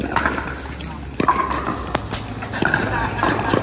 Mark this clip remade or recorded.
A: recorded